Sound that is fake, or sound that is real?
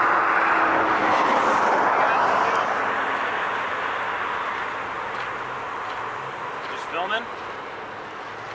real